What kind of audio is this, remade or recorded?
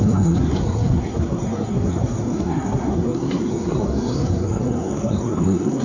remade